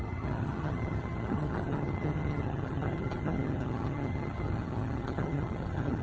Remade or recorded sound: remade